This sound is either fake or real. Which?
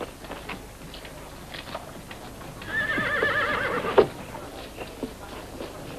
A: real